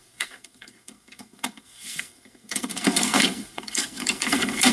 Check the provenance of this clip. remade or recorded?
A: remade